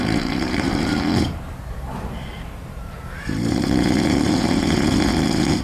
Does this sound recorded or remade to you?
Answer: remade